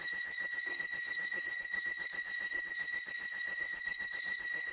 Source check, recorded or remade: remade